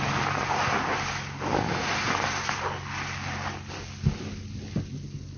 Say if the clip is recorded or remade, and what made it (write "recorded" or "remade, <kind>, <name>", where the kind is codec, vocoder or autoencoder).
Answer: recorded